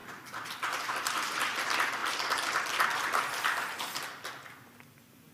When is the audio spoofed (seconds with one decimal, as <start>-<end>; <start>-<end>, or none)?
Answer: none

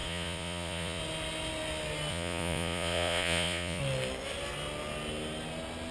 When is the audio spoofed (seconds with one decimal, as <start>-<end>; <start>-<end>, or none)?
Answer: 0.0-1.0; 2.1-3.8

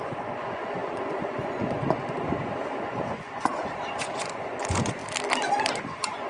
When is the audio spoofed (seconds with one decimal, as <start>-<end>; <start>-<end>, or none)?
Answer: 0.0-5.0; 5.8-6.3

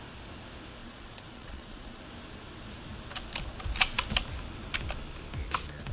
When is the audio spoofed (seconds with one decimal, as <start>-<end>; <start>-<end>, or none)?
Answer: 0.8-2.0